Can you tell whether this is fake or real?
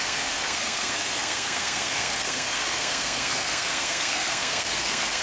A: fake